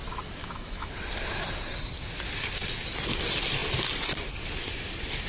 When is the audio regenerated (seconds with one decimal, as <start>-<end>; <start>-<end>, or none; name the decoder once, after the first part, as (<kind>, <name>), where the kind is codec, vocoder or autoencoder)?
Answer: 0.4-0.9 (autoencoder, DAC-VAE)